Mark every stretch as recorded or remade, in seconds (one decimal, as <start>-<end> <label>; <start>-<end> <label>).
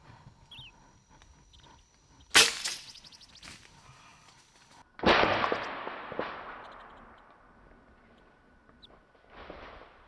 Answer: 0.0-2.6 recorded; 2.6-3.3 remade; 3.3-10.1 recorded